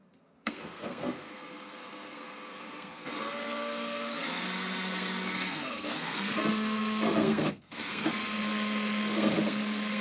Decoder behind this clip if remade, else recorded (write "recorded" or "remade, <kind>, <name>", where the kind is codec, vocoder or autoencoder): remade, codec, SNAC